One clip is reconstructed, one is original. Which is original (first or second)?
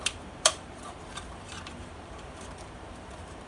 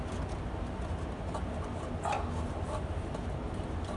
second